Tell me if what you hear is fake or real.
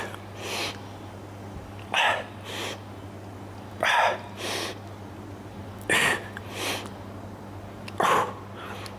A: real